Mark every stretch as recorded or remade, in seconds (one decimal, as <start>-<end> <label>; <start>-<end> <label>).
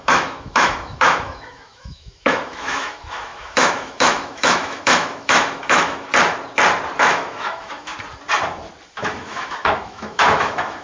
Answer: 0.0-6.1 remade; 6.1-7.0 recorded; 7.0-7.9 remade; 7.9-9.0 recorded; 9.0-10.8 remade